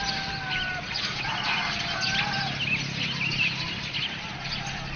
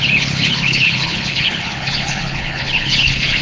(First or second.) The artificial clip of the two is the second